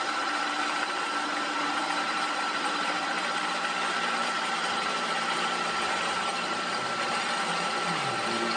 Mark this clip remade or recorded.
remade